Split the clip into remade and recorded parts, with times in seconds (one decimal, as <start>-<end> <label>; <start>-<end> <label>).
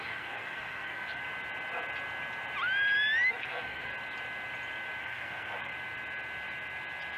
0.0-1.2 remade; 1.2-3.3 recorded; 3.3-3.9 remade; 3.9-5.0 recorded; 5.0-5.7 remade; 5.7-7.2 recorded